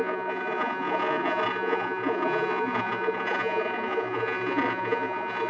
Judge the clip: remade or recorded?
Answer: remade